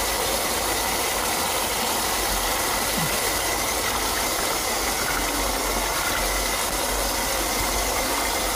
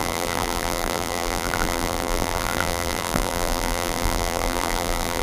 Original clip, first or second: first